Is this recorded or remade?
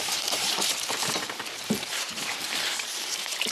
remade